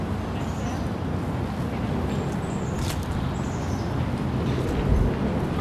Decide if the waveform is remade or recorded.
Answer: recorded